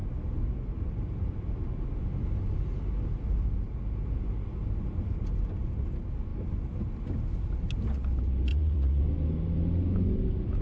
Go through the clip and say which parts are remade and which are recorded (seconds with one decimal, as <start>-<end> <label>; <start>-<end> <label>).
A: 0.0-8.5 recorded; 8.5-9.0 remade; 9.0-10.6 recorded